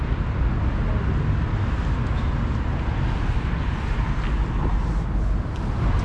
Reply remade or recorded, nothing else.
recorded